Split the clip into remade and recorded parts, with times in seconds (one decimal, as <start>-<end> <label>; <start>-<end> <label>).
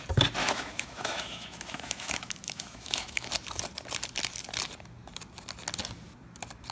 0.0-0.4 recorded; 0.4-3.3 remade; 3.3-6.7 recorded